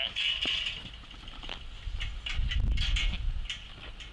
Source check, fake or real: real